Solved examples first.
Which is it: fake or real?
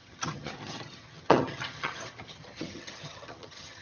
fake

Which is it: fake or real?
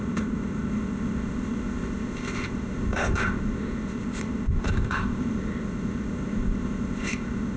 fake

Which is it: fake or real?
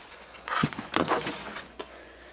fake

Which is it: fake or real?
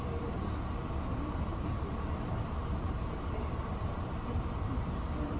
fake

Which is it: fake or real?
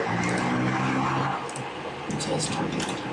real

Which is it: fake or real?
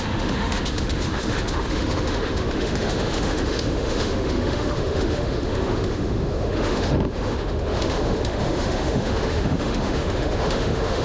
fake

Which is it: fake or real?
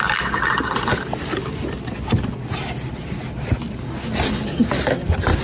real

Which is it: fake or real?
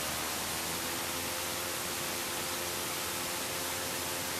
real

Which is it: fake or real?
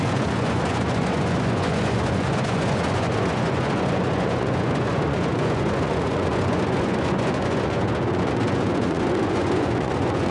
fake